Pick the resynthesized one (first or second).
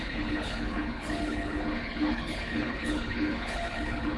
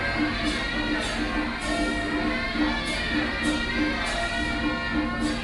first